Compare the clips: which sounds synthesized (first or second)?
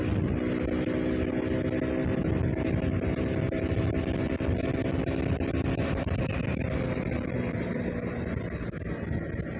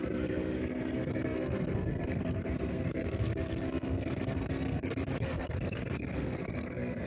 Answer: second